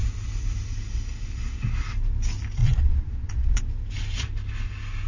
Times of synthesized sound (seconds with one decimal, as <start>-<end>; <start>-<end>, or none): 2.6-3.6